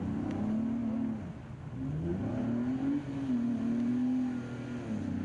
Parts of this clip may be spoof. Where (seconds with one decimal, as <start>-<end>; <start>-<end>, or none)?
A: 2.1-3.9